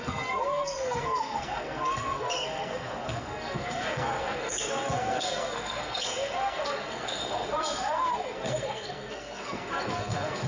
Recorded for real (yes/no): no